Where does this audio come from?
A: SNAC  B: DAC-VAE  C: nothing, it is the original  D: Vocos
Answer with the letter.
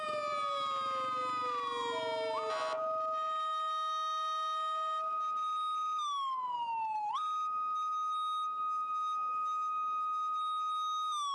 C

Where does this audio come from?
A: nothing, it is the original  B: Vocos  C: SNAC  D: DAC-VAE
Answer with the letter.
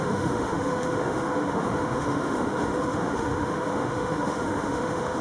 D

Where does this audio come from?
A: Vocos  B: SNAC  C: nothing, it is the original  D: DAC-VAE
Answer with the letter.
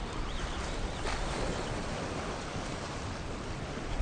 C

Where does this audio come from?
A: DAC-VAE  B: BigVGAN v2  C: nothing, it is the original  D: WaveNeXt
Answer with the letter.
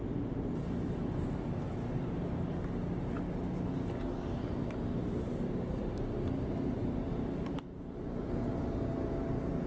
C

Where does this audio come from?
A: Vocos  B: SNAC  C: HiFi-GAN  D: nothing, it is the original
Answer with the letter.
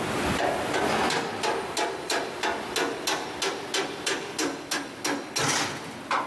D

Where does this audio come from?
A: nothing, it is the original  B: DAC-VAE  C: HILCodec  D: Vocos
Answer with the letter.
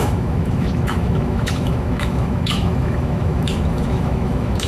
B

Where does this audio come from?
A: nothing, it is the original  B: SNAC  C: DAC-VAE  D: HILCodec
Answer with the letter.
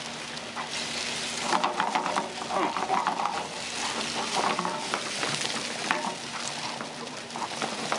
A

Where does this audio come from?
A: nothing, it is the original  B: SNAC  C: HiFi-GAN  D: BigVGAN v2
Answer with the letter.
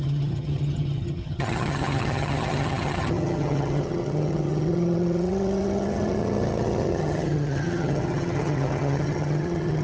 C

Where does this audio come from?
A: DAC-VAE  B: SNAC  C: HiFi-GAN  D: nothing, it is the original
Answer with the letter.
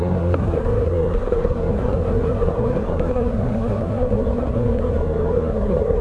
B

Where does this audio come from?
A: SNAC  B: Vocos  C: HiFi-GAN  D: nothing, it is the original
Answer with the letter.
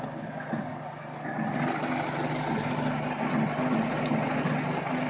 D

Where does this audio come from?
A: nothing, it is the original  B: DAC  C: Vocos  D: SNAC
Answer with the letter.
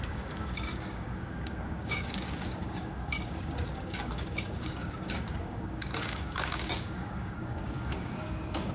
B